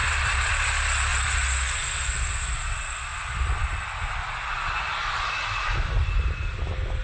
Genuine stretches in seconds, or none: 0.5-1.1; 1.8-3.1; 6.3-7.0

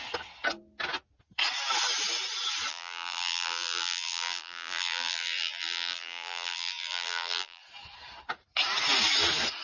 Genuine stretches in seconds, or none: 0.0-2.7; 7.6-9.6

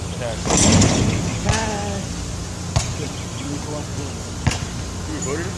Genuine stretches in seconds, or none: 0.0-5.6